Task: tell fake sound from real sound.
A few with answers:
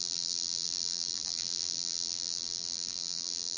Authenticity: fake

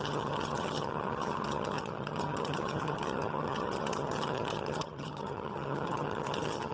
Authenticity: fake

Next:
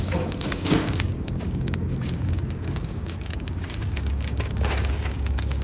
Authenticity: fake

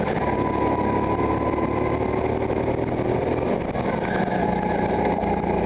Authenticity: real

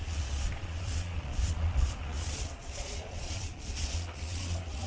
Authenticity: fake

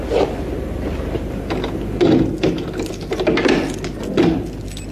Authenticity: real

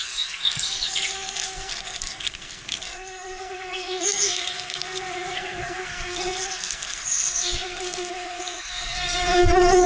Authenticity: fake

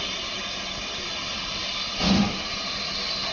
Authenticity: real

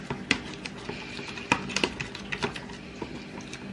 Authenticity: real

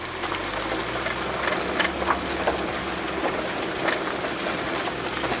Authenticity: real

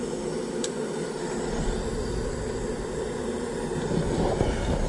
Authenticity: real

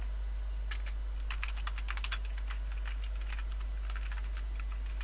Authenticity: real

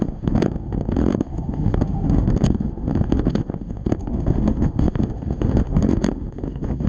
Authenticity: fake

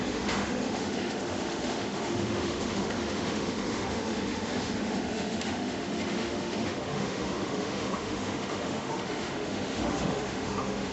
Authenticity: fake